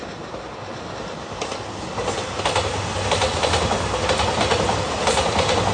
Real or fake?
real